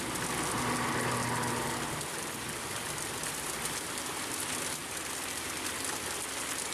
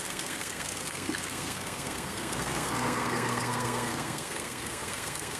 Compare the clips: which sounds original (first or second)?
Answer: first